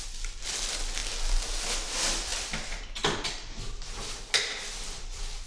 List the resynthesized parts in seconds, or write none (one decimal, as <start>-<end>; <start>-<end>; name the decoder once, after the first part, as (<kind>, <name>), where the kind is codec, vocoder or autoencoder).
none

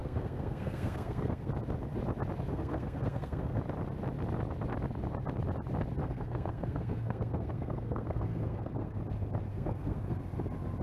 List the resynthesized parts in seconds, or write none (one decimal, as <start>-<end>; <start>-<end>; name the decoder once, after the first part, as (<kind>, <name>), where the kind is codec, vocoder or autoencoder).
0.0-1.5 (codec, SNAC); 2.5-3.6; 6.0-9.0; 9.5-10.2

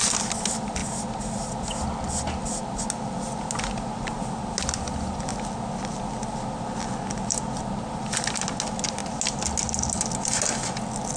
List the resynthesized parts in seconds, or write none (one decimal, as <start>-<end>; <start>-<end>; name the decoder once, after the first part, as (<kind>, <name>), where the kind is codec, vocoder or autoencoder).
none

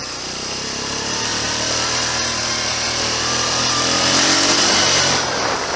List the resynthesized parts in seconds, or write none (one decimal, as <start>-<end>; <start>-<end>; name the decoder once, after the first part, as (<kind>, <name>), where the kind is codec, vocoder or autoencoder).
none

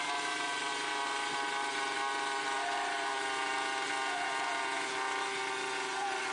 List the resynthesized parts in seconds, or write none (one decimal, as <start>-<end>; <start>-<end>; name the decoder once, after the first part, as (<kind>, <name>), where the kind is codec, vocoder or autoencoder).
none

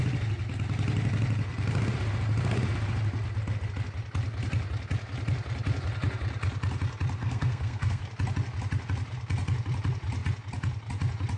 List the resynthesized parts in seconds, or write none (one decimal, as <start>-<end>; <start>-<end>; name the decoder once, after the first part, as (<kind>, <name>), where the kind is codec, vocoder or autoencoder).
7.2-8.0 (codec, SNAC)

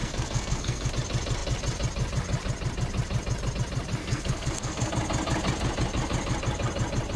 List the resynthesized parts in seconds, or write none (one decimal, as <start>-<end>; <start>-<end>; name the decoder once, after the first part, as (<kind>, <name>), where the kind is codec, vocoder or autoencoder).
0.0-0.9 (codec, SNAC); 4.0-4.9